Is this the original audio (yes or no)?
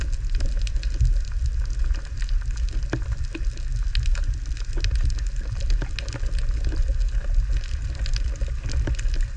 yes